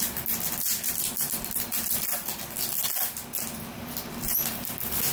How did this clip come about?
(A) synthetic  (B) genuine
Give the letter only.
B